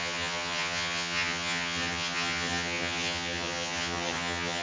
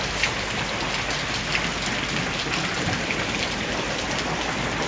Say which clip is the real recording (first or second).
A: second